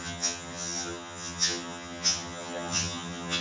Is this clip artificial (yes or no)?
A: yes